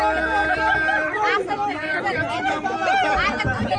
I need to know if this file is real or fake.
fake